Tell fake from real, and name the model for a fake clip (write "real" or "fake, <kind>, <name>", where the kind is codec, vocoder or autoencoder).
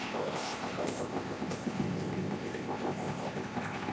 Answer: fake, codec, ZipCodec